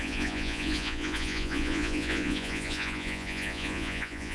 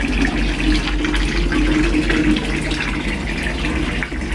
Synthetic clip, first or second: first